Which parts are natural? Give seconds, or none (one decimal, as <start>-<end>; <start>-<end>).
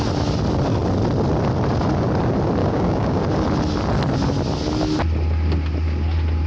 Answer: 0.0-2.6; 3.2-6.5